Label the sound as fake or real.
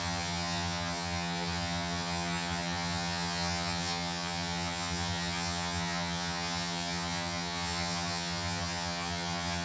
fake